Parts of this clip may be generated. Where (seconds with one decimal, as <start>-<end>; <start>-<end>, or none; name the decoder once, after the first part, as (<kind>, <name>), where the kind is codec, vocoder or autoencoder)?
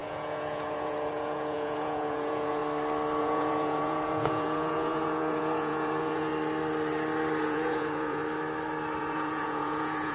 0.0-2.6 (vocoder, Vocos); 3.2-6.3; 7.4-8.2; 9.0-10.1